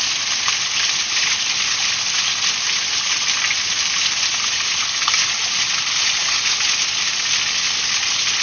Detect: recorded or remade recorded